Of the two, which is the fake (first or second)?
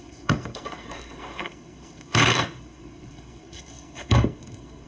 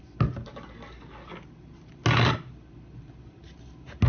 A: first